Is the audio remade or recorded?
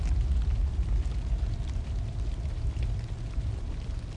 recorded